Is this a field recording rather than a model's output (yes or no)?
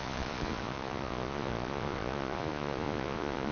no